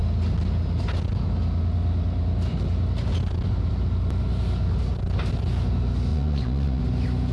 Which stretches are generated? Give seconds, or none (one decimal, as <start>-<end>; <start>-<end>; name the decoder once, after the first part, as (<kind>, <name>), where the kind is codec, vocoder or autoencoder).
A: 6.1-6.8 (vocoder, Vocos)